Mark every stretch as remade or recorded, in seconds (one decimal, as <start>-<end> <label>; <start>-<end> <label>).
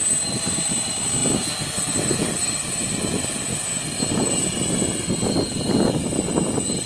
0.0-6.9 recorded